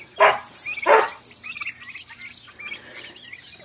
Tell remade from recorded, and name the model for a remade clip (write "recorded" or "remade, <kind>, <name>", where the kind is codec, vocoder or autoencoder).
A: recorded